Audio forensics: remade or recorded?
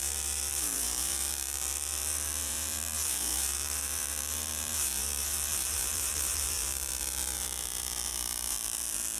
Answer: remade